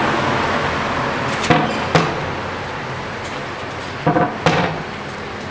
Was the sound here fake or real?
real